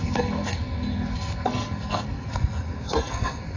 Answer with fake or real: fake